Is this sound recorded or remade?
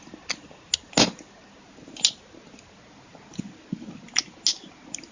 recorded